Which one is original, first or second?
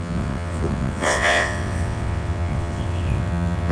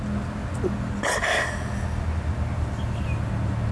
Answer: second